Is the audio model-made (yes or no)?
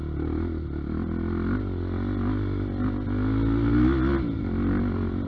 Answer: no